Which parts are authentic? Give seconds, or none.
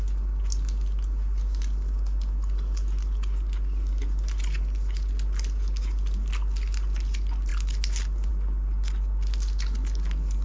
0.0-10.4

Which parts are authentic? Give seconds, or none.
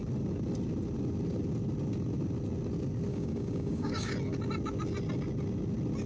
0.0-3.1; 4.1-6.1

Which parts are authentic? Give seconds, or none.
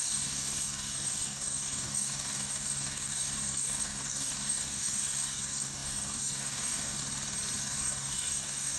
7.0-7.6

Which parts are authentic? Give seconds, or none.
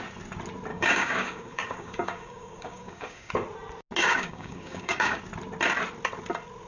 0.0-0.7; 3.3-4.0; 5.2-6.7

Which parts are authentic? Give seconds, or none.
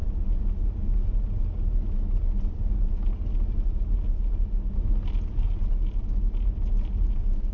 0.0-7.5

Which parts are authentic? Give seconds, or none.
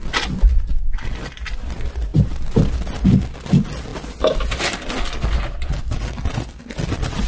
0.0-7.3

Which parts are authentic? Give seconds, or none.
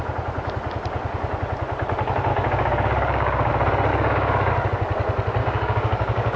0.0-2.3; 3.5-3.9; 4.5-5.4